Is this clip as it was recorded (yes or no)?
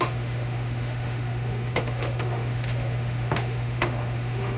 no